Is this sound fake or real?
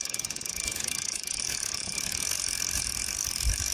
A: fake